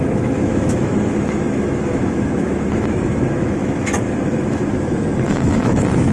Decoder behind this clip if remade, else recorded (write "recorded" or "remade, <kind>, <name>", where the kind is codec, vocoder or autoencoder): remade, autoencoder, DAC-VAE